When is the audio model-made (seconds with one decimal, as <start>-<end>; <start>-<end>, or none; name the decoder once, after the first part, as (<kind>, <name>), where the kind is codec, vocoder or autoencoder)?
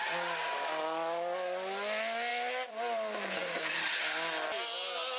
2.3-3.7 (vocoder, BigVGAN v2)